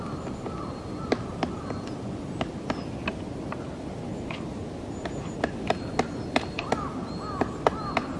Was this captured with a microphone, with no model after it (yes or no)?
yes